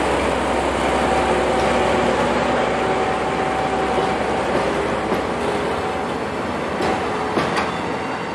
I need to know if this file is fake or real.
real